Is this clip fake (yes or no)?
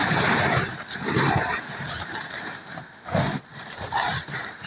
yes